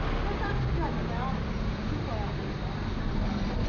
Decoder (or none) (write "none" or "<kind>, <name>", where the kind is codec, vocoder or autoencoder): none